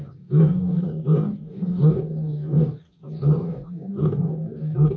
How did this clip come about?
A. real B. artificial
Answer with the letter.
B